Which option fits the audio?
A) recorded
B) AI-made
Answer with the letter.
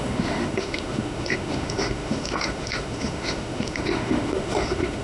B